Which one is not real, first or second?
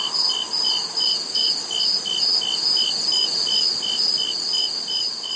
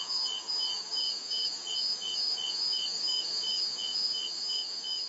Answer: second